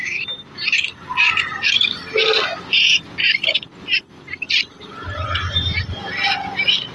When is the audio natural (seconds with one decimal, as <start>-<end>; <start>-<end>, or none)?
0.0-6.9